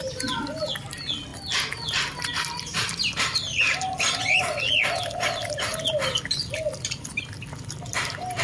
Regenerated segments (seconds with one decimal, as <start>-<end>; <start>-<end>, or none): none